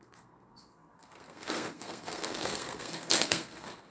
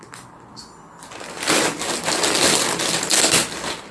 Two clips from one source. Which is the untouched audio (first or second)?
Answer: second